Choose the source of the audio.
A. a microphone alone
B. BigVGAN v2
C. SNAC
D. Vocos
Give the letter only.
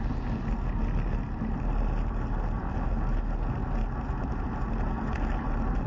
A